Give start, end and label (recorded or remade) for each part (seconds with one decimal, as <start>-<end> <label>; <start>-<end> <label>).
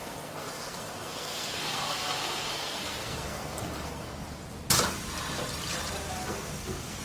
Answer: 0.0-4.2 remade; 4.2-6.2 recorded; 6.2-7.0 remade